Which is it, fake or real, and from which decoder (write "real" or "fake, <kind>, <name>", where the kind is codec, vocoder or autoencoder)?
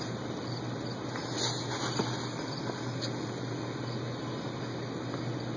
real